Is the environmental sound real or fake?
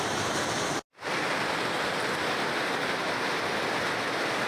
real